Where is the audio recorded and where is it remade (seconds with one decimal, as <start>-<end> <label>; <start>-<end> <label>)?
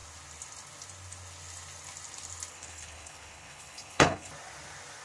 0.0-2.5 recorded; 2.5-4.3 remade; 4.3-5.0 recorded